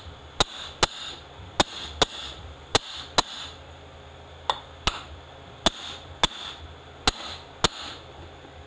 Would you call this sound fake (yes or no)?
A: no